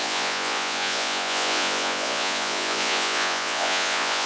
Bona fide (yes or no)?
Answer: no